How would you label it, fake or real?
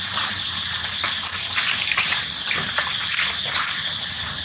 real